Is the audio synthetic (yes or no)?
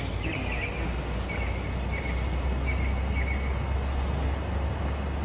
no